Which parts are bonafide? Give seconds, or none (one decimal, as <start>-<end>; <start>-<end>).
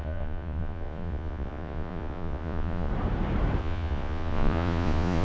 2.9-3.6